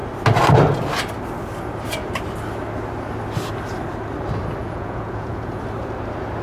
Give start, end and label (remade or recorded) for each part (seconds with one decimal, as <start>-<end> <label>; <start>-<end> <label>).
0.0-4.6 recorded; 4.6-5.6 remade; 5.6-6.4 recorded